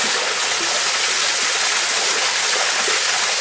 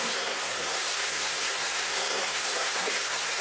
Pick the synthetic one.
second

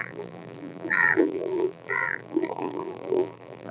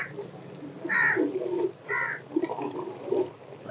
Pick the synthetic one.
first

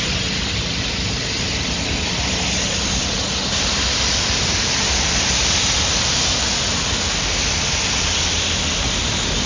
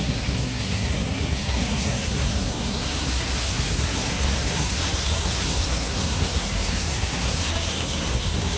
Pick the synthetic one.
second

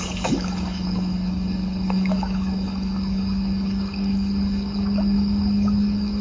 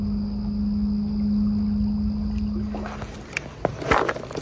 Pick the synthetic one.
first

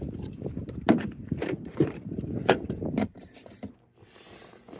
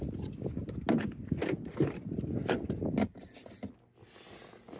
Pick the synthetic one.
first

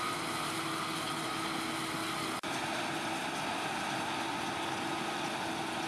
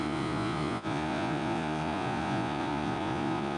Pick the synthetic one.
second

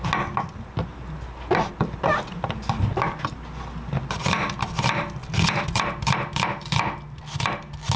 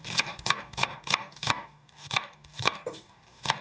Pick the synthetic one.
second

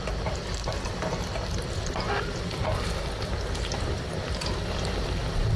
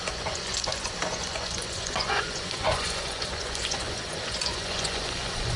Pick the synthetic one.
second